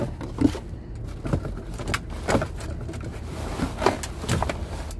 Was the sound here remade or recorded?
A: recorded